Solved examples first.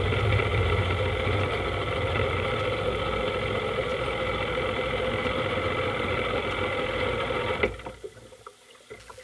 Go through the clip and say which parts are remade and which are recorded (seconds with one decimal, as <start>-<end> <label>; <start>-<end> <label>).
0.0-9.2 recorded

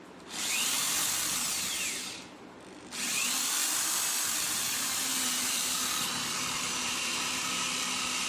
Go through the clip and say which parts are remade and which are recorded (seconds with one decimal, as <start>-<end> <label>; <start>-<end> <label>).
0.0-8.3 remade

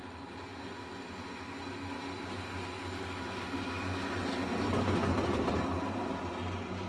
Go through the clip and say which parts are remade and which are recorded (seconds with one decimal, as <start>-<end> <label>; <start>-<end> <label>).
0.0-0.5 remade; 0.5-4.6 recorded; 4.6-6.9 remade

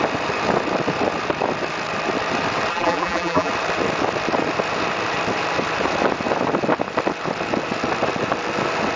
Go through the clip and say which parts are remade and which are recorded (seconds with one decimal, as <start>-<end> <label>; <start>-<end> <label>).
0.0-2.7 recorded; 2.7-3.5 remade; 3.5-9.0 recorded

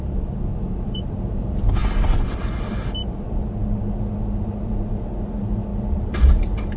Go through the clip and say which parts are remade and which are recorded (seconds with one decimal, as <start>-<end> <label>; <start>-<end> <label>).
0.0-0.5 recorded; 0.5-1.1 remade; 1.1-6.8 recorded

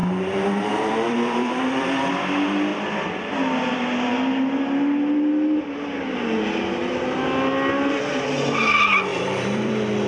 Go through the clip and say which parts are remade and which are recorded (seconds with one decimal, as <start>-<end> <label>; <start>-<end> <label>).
0.0-2.1 remade; 2.1-2.7 recorded; 2.7-3.3 remade; 3.3-9.1 recorded; 9.1-10.1 remade

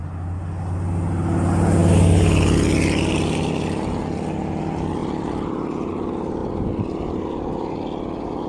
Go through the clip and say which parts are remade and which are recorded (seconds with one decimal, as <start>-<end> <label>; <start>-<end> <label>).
0.0-5.0 recorded; 5.0-5.9 remade; 5.9-8.5 recorded

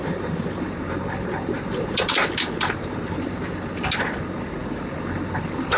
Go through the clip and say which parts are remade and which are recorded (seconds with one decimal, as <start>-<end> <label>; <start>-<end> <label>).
0.0-3.5 remade; 3.5-5.8 recorded